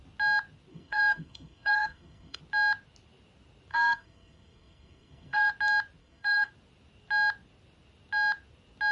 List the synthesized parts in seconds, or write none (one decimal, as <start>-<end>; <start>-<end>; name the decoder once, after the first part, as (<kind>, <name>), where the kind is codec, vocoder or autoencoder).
0.7-2.4 (codec, SNAC); 3.7-5.5; 6.0-6.5